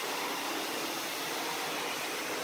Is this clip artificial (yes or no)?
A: no